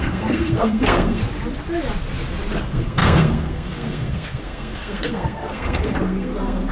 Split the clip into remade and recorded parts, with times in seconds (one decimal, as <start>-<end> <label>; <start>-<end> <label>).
0.0-1.2 remade; 1.2-2.6 recorded; 2.6-6.7 remade